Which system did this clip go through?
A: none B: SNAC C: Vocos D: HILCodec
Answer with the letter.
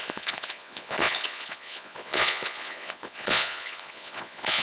C